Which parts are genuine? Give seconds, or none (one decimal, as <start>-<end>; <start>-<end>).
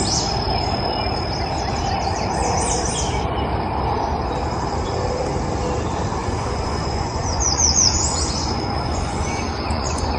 0.0-6.2